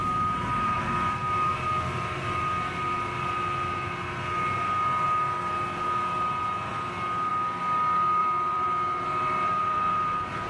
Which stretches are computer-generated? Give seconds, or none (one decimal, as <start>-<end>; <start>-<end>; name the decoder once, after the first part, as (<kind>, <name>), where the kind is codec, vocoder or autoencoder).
0.0-1.5 (vocoder, BigVGAN v2); 8.2-10.5